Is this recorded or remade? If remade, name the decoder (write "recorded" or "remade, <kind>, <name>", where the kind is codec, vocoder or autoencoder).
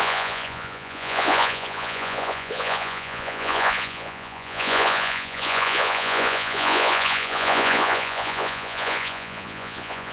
remade, vocoder, Vocos